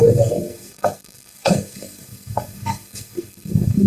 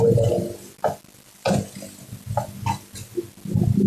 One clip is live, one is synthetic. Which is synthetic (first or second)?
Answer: first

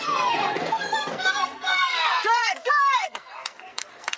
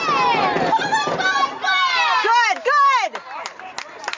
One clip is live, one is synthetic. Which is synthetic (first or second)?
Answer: first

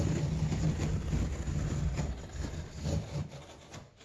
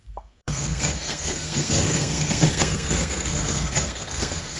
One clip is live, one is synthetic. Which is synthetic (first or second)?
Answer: second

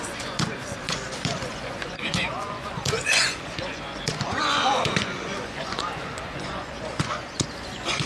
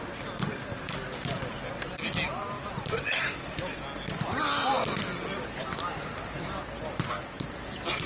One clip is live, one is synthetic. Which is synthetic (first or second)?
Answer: first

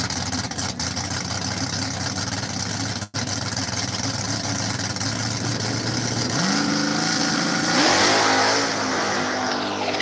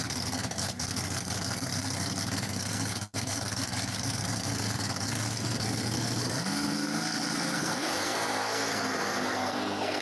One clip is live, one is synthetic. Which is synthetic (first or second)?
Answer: second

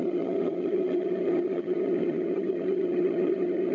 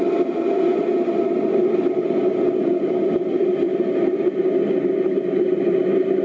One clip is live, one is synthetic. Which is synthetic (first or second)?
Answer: first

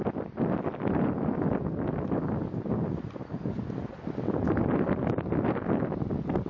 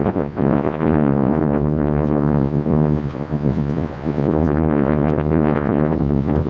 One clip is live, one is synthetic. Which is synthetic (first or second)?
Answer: second